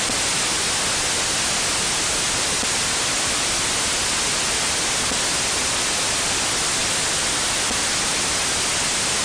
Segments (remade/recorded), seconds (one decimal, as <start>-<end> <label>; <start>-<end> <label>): 0.0-9.2 recorded